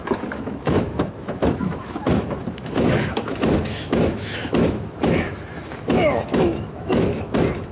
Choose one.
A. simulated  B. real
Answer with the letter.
A